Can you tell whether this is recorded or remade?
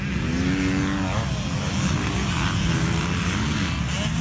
recorded